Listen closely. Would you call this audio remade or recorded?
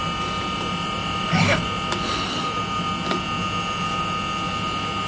recorded